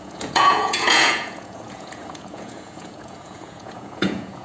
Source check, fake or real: fake